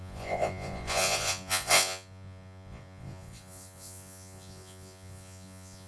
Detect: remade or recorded remade